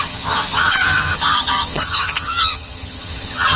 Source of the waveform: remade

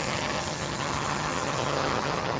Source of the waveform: remade